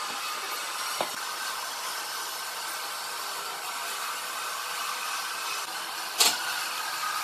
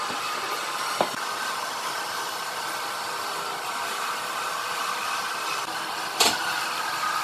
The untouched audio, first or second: first